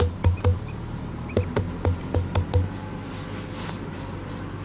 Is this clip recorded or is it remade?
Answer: recorded